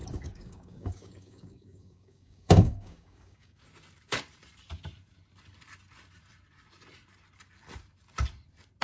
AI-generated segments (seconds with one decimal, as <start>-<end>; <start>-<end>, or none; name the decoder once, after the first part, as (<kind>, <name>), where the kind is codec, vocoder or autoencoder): 0.0-3.6 (codec, DAC)